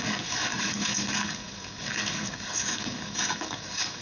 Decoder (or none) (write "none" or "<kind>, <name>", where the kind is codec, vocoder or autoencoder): codec, DAC